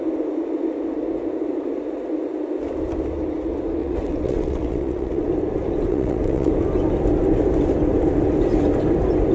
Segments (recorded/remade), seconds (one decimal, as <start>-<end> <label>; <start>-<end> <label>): 0.0-3.8 recorded; 3.8-5.3 remade; 5.3-5.9 recorded; 5.9-6.5 remade; 6.5-9.3 recorded